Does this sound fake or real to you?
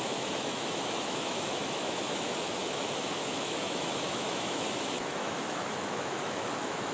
fake